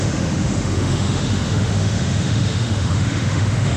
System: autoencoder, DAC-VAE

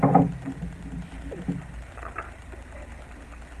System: none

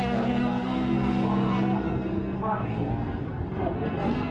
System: codec, SNAC